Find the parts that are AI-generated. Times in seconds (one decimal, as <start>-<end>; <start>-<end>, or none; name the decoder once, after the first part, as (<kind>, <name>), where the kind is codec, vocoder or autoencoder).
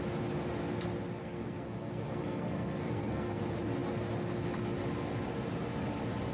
1.2-3.4 (codec, SNAC)